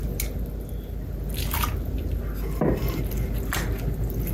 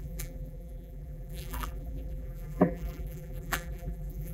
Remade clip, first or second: second